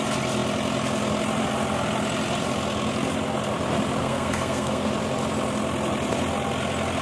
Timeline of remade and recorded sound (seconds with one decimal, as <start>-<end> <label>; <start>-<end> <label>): 0.0-4.0 recorded; 4.0-4.9 remade; 4.9-7.0 recorded